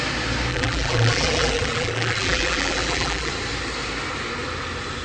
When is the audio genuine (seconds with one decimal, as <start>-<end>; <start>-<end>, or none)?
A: 0.0-0.5; 3.3-5.0